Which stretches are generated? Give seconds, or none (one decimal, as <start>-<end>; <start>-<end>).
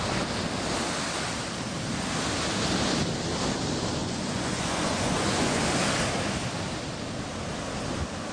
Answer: 4.0-5.6